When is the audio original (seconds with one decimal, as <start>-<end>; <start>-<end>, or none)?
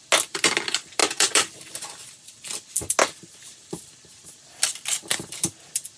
0.0-6.0